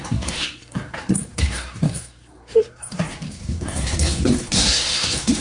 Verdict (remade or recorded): remade